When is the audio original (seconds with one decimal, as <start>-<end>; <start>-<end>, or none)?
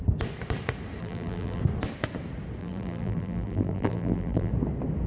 0.0-1.0; 1.6-2.6; 4.5-5.1